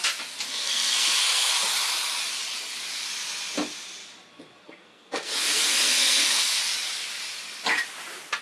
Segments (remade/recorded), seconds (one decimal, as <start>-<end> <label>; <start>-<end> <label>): 0.0-0.5 recorded; 0.5-1.5 remade; 1.5-4.6 recorded; 4.6-6.6 remade; 6.6-8.4 recorded